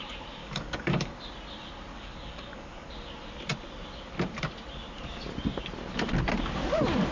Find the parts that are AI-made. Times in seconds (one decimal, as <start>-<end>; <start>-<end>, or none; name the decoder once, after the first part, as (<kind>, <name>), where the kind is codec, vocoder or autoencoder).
0.4-1.1 (codec, DAC); 1.9-2.9

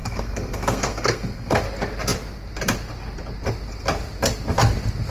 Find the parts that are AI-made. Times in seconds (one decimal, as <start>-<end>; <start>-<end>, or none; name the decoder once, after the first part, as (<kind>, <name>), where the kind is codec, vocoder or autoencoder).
0.0-1.6 (codec, SNAC)

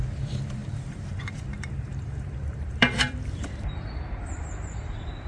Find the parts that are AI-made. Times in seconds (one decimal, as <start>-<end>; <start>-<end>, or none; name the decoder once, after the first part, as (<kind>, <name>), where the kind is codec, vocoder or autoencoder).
0.0-5.3 (vocoder, BigVGAN v2)

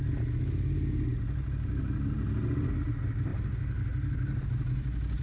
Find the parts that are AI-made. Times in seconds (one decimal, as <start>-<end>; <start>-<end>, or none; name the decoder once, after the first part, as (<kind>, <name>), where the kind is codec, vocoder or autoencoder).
none

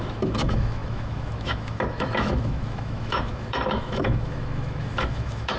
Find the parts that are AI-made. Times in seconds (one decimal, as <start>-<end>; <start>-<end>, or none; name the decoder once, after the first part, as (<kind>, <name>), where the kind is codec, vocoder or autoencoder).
0.0-5.6 (autoencoder, DAC-VAE)